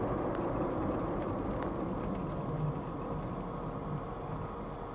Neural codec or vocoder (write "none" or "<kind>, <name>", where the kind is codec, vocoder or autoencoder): none